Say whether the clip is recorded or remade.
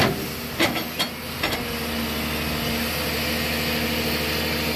recorded